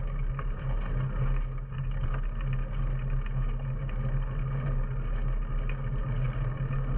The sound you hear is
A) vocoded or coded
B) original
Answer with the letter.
B